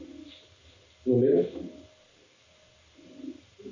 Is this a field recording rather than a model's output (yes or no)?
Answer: yes